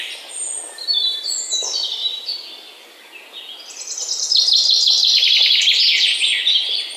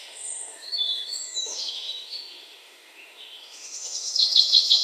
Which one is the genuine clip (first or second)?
first